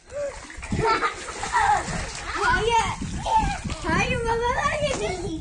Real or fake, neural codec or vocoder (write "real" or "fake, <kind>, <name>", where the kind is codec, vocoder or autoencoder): real